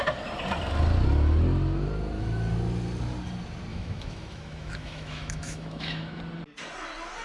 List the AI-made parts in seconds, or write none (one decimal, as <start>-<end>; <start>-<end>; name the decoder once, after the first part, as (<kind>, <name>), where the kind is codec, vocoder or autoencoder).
3.7-6.2 (autoencoder, DAC-VAE)